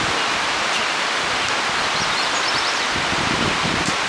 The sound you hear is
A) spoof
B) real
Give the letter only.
B